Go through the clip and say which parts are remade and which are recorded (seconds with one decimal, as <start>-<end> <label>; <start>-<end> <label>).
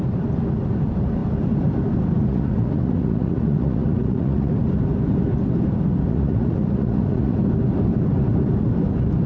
0.0-2.3 recorded; 2.3-4.5 remade; 4.5-6.1 recorded; 6.1-7.4 remade; 7.4-9.3 recorded